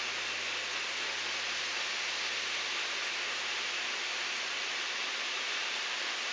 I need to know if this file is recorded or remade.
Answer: recorded